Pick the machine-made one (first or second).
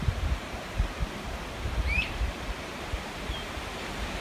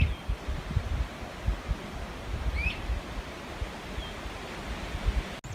first